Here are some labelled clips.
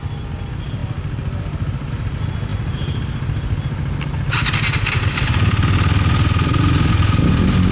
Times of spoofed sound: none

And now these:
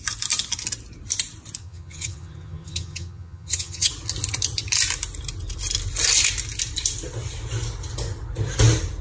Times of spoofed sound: 1.6-3.9

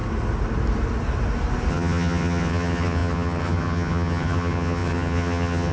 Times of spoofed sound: 1.7-5.7